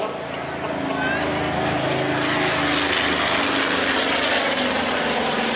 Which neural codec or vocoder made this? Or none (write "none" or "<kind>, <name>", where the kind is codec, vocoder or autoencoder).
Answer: none